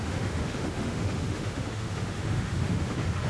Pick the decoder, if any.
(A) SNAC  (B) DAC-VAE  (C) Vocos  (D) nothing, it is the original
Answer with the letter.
B